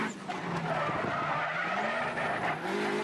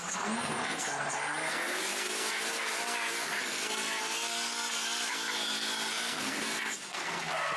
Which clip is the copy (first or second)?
second